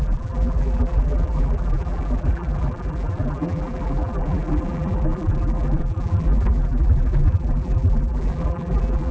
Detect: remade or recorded remade